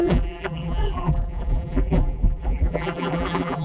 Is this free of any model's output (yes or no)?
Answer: no